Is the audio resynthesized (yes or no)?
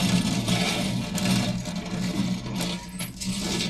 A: no